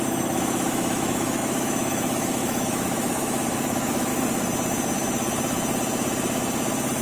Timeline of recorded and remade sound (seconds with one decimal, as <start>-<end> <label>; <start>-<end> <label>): 0.0-4.1 remade; 4.1-7.0 recorded